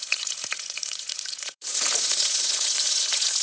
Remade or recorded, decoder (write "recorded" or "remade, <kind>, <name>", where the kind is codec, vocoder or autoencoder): remade, vocoder, Vocos